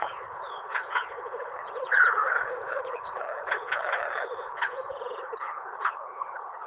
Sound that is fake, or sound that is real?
fake